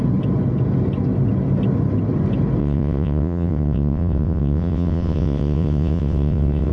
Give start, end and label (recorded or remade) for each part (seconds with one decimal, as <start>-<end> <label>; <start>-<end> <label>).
0.0-2.6 recorded; 2.6-6.7 remade